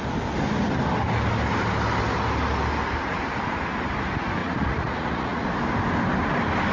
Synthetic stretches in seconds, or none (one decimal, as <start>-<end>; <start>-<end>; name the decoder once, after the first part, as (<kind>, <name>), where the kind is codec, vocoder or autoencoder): 4.4-5.5 (vocoder, Vocos)